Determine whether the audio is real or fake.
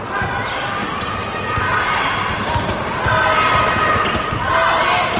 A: real